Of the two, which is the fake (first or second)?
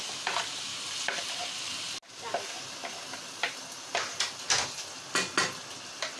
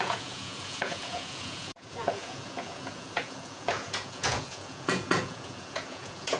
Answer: second